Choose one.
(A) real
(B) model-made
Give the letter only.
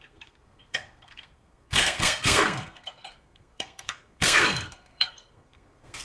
B